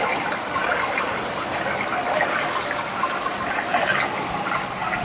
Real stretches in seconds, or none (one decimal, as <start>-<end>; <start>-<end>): 0.0-5.0